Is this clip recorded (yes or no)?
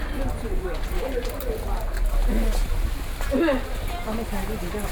yes